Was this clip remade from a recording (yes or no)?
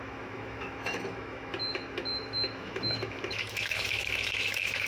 yes